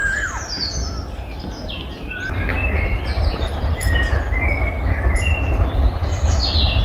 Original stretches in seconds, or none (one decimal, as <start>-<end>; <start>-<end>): 0.7-2.6; 3.9-6.8